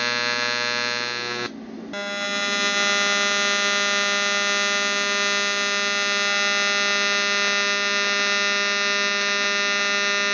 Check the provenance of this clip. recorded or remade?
recorded